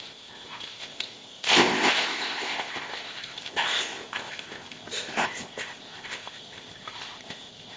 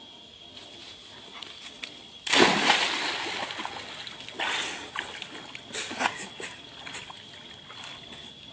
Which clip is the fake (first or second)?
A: first